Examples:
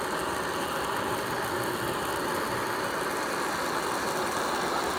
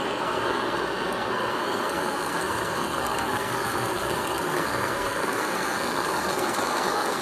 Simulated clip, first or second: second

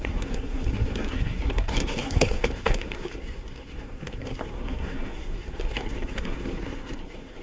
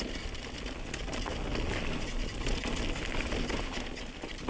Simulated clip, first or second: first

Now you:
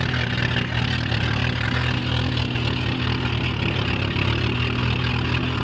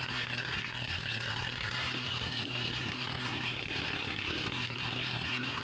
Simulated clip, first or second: second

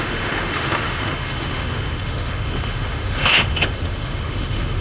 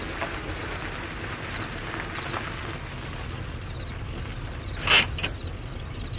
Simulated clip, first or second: first